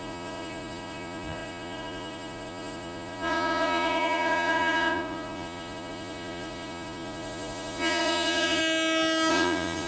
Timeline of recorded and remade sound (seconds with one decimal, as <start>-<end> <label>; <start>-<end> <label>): 0.0-8.6 remade; 8.6-9.3 recorded; 9.3-9.9 remade